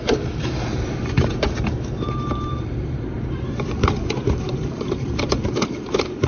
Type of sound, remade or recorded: remade